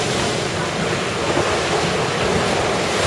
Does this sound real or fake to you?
real